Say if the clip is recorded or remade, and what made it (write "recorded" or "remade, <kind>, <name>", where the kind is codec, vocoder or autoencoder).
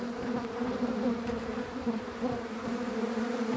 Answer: remade, vocoder, BigVGAN v2